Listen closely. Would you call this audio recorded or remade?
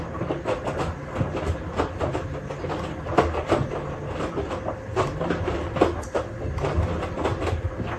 recorded